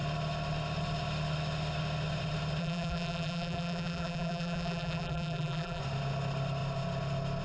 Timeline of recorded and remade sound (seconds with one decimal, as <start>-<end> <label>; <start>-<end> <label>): 0.0-2.6 recorded; 2.6-5.8 remade; 5.8-7.4 recorded